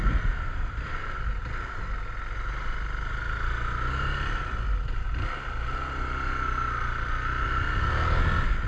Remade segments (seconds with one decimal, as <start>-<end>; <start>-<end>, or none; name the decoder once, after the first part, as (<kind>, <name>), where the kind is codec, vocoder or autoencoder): 0.0-1.1 (vocoder, BigVGAN v2)